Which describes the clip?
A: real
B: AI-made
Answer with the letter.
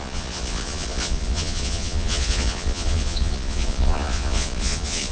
B